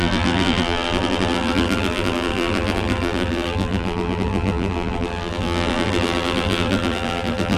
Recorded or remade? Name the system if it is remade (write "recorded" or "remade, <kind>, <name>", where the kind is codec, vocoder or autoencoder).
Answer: remade, vocoder, BigVGAN v2